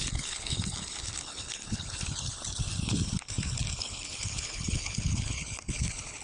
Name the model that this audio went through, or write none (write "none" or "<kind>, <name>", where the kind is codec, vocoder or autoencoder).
codec, HILCodec